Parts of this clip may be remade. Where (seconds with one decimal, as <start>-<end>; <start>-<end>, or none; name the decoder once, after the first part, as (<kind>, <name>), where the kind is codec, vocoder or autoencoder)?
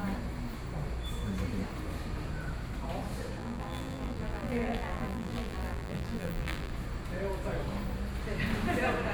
3.4-6.7 (vocoder, BigVGAN v2)